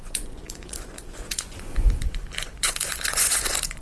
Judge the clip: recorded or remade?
remade